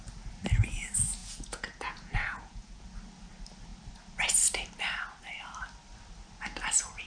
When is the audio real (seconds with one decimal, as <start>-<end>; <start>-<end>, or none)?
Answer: 0.0-1.2; 2.8-7.1